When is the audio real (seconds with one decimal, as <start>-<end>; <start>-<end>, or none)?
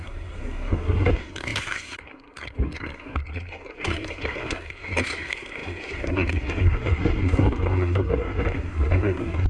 none